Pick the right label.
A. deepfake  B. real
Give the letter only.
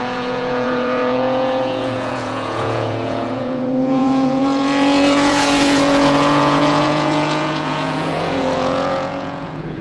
A